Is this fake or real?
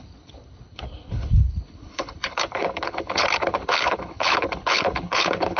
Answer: fake